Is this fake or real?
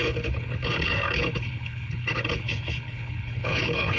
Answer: fake